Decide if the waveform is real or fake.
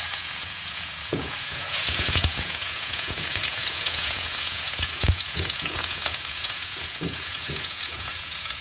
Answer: fake